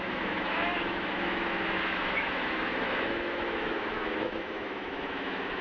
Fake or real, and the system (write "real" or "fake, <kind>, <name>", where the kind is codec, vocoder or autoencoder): fake, autoencoder, DAC-VAE